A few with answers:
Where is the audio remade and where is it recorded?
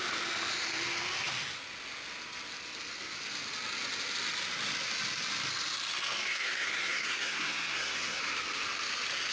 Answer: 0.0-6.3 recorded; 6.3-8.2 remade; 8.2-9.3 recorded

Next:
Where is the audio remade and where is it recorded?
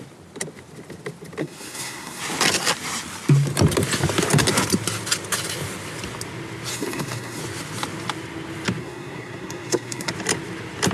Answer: 0.0-1.4 recorded; 1.4-2.2 remade; 2.2-6.7 recorded; 6.7-7.4 remade; 7.4-8.8 recorded; 8.8-10.1 remade; 10.1-10.9 recorded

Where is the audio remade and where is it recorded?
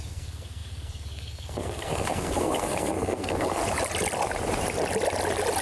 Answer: 0.0-3.6 remade; 3.6-5.6 recorded